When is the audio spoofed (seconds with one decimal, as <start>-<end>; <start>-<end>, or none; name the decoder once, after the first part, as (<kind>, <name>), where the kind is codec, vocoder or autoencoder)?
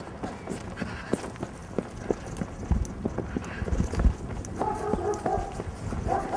none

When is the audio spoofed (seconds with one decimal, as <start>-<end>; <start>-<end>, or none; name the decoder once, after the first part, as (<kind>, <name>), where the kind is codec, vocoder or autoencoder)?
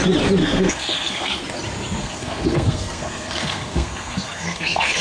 0.4-1.4 (codec, SNAC); 2.0-5.0